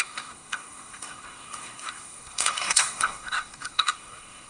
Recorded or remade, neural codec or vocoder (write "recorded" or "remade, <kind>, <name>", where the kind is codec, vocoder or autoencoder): remade, codec, SNAC